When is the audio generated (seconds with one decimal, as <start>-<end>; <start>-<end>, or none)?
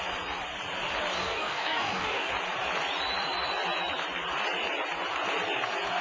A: 1.2-2.3